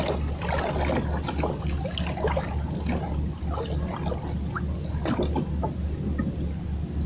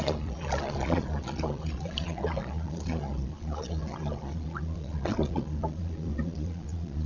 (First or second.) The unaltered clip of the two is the first